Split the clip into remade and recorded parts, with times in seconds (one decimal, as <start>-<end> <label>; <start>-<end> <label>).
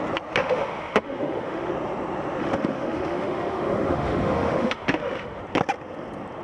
0.0-0.4 recorded; 0.4-1.7 remade; 1.7-2.4 recorded; 2.4-5.4 remade; 5.4-6.4 recorded